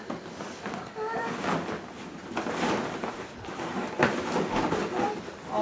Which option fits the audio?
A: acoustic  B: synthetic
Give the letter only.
A